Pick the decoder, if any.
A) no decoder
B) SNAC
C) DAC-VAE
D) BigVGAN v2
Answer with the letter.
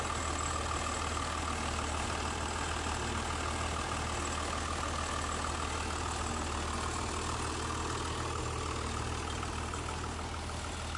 A